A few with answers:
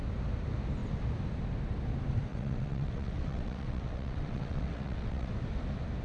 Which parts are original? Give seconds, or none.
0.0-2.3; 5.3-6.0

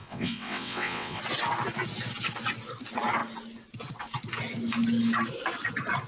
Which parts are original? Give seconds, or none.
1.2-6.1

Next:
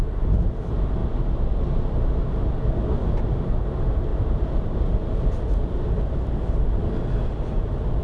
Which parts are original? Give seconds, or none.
0.0-8.0

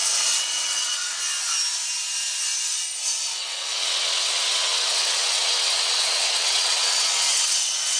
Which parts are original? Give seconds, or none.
1.2-3.3

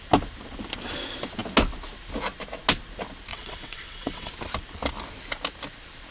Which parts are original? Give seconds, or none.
0.0-3.3; 4.3-6.1

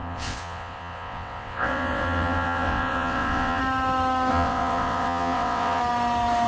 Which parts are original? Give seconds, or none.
3.6-4.3; 5.8-6.5

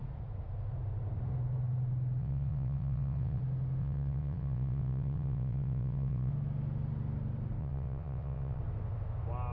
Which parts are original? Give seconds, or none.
0.0-2.2; 3.4-3.8; 6.3-7.6; 8.6-9.5